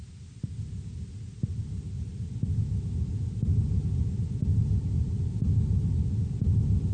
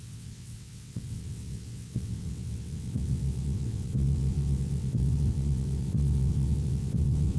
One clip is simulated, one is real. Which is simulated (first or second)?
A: second